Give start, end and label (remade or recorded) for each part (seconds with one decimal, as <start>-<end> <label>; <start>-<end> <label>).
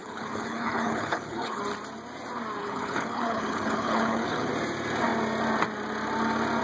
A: 0.0-1.6 remade; 1.6-2.6 recorded; 2.6-4.5 remade; 4.5-6.6 recorded